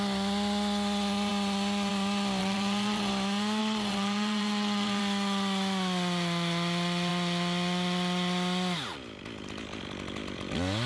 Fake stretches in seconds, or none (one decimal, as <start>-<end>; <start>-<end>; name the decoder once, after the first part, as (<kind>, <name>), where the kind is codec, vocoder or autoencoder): 2.4-3.1 (vocoder, WaveNeXt); 3.6-5.0